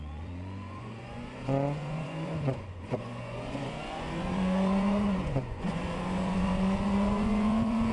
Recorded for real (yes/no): no